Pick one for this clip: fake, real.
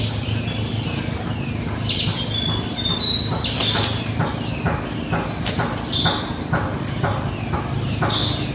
real